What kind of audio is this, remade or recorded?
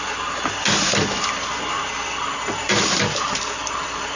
recorded